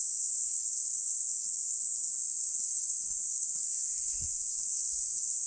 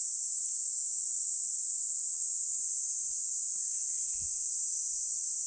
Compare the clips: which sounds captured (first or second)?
second